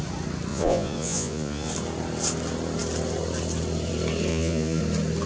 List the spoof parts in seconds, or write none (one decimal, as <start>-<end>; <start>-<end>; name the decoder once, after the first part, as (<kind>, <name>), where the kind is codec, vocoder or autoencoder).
0.5-1.7 (vocoder, Vocos); 4.3-4.8